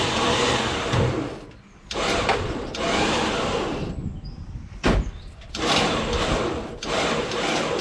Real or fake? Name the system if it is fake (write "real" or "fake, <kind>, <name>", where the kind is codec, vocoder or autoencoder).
real